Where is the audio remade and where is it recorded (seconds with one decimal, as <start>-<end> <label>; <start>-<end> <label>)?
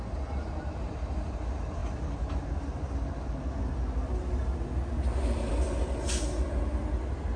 0.0-7.4 recorded